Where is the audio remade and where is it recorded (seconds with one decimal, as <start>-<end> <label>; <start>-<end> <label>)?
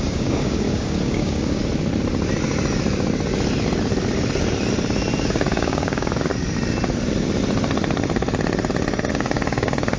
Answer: 0.0-1.6 remade; 1.6-5.3 recorded; 5.3-6.3 remade; 6.3-9.1 recorded; 9.1-10.0 remade